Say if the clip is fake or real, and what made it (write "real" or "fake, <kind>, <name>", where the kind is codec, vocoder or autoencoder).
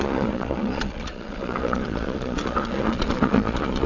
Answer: fake, vocoder, Vocos